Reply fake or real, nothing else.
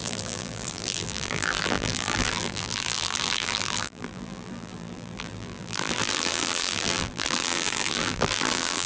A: fake